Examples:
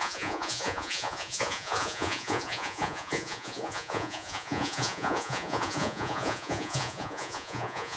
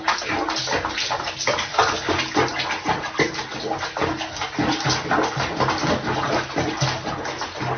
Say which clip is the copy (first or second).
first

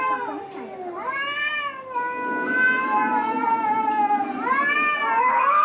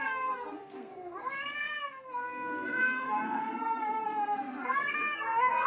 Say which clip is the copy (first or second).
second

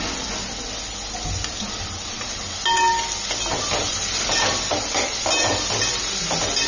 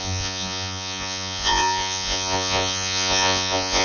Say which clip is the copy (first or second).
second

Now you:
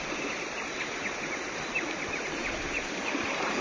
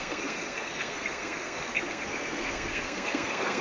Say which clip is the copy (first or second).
second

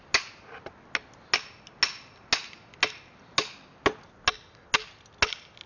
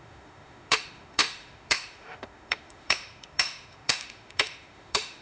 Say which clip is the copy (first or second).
second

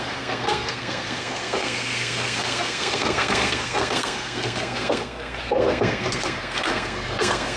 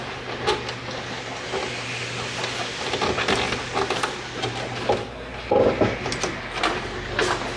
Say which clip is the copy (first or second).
first